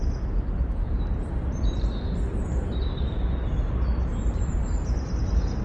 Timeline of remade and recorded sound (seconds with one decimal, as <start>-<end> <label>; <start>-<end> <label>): 0.0-0.8 recorded; 0.8-2.8 remade; 2.8-4.1 recorded; 4.1-5.6 remade